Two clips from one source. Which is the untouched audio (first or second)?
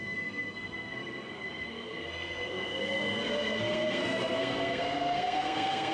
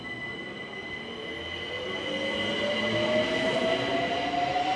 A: second